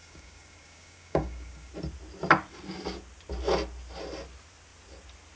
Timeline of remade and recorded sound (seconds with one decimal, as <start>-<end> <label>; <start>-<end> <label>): 0.0-1.7 remade; 1.7-5.4 recorded